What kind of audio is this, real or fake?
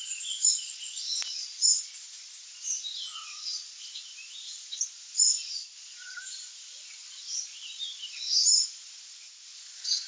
fake